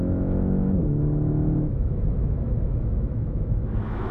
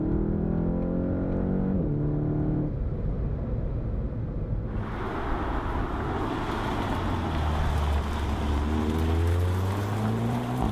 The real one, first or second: second